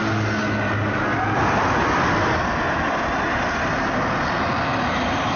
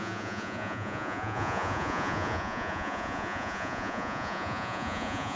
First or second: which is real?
first